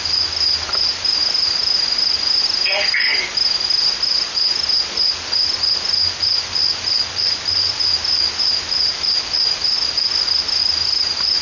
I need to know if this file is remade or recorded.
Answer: recorded